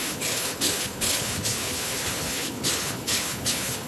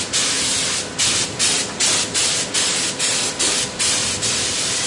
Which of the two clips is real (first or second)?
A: second